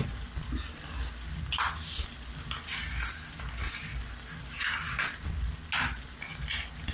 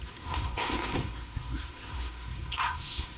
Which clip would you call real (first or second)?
first